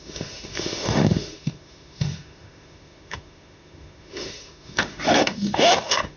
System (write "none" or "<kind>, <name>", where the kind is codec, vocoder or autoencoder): autoencoder, DAC-VAE